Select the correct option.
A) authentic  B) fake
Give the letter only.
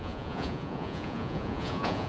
B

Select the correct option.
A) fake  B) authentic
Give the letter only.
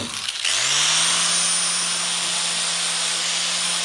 B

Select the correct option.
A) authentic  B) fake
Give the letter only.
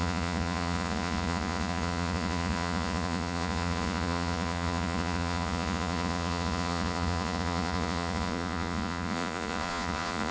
B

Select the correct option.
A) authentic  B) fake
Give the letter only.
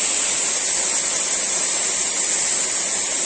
A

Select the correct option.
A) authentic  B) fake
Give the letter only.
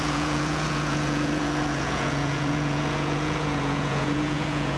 B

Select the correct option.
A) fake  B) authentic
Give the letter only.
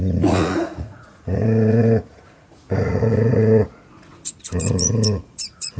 A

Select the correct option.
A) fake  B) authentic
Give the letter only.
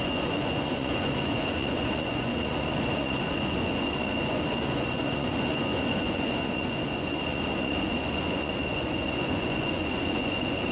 A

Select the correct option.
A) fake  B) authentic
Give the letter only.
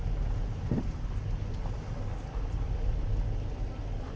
B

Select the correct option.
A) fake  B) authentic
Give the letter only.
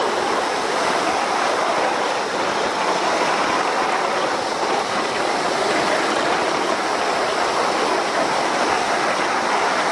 B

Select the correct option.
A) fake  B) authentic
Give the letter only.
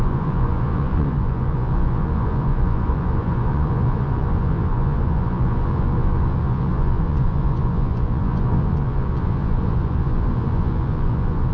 A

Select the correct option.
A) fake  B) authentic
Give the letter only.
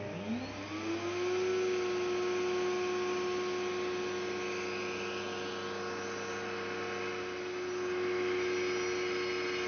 B